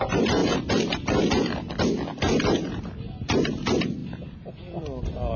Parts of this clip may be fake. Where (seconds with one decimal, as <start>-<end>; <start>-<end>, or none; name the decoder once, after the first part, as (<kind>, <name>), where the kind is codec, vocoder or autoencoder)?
0.0-0.4 (vocoder, BigVGAN v2); 2.2-5.4